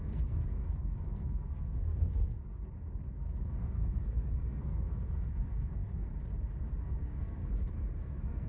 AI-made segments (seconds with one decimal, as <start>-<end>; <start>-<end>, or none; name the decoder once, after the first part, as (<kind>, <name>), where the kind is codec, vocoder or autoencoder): 0.0-2.4 (codec, SNAC); 3.1-6.1; 6.8-7.4; 8.0-8.5